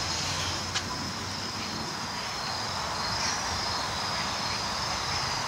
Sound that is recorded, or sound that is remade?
recorded